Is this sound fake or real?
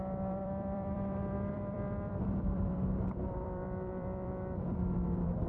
fake